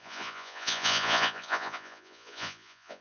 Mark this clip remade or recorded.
remade